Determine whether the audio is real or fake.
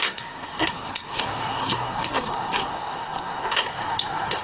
fake